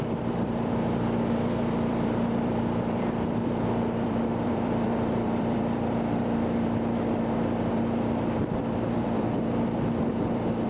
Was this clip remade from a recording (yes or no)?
yes